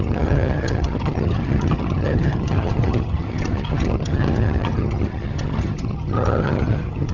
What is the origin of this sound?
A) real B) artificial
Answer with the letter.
B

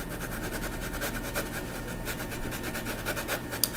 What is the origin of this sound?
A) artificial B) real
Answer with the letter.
B